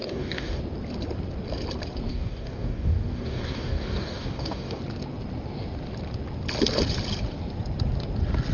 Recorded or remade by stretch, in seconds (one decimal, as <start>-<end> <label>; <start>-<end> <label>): 0.0-0.6 remade; 0.6-2.1 recorded; 2.1-4.8 remade; 4.8-8.5 recorded